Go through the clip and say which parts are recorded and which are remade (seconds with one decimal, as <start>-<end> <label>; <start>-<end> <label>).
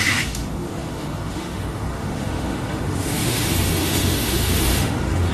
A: 0.0-5.3 remade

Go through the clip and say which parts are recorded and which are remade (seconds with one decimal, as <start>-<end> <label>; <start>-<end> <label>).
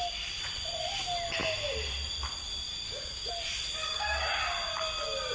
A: 0.0-2.7 recorded; 2.7-3.3 remade; 3.3-3.8 recorded; 3.8-4.4 remade; 4.4-5.3 recorded